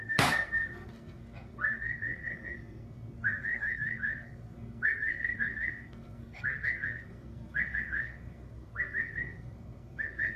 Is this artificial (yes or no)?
yes